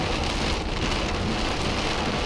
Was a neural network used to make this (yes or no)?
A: no